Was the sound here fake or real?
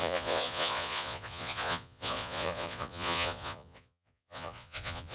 fake